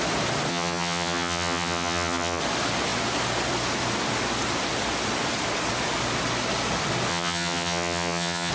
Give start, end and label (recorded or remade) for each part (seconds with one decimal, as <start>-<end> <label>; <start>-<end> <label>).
0.0-0.5 recorded; 0.5-2.4 remade; 2.4-7.1 recorded; 7.1-8.5 remade